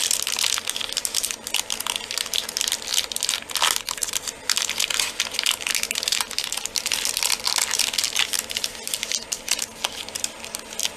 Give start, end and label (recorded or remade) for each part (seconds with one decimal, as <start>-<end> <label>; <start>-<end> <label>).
0.0-11.0 recorded